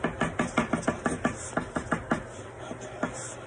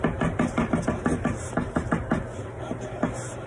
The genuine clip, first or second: first